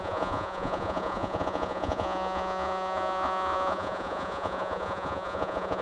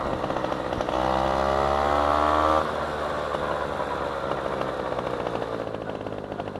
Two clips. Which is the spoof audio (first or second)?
first